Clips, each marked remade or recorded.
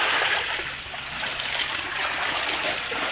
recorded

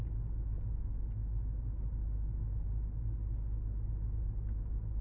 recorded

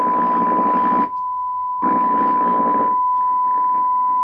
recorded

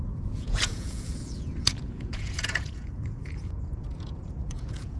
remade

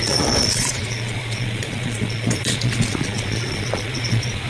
remade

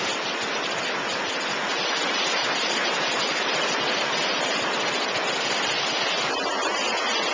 recorded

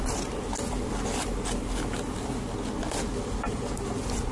recorded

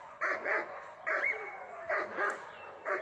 remade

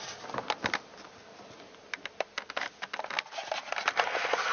recorded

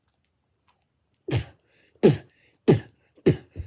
recorded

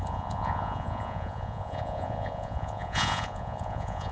remade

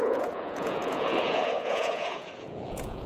remade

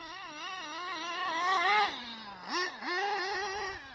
recorded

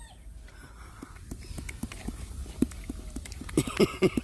recorded